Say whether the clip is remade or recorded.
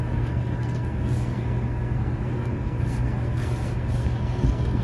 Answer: remade